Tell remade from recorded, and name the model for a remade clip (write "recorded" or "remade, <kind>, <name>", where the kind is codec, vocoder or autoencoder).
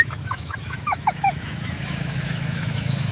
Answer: remade, autoencoder, DAC-VAE